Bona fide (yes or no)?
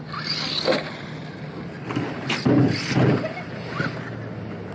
yes